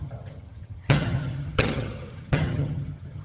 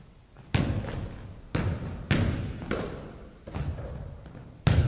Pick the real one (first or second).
second